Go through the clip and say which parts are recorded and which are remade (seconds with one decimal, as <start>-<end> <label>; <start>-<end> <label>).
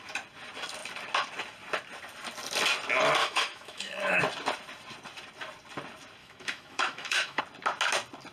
0.0-3.2 recorded; 3.2-4.2 remade; 4.2-6.2 recorded; 6.2-7.4 remade; 7.4-8.3 recorded